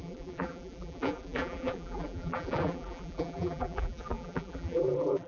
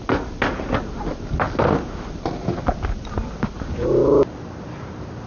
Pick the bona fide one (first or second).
second